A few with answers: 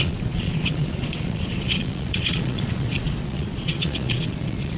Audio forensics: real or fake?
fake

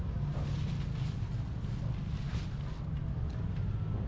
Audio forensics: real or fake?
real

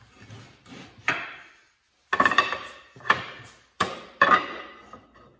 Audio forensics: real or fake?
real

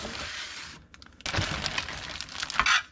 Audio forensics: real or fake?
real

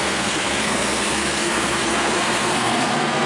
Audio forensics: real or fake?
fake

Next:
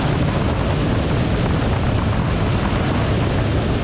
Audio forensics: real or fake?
real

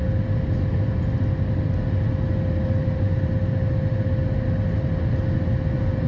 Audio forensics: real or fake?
real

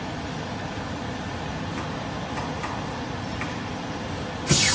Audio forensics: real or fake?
real